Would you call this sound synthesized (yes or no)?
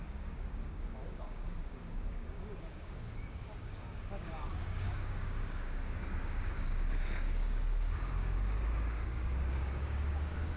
yes